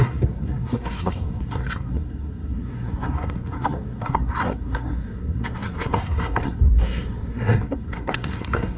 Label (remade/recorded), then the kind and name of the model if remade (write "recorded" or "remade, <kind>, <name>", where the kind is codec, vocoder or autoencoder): remade, codec, SNAC